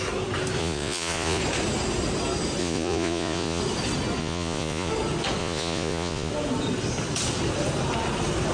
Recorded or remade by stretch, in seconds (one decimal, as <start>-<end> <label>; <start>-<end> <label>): 0.0-0.6 recorded; 0.6-1.4 remade; 1.4-2.6 recorded; 2.6-3.6 remade; 3.6-4.2 recorded; 4.2-4.9 remade; 4.9-5.4 recorded; 5.4-6.3 remade; 6.3-8.5 recorded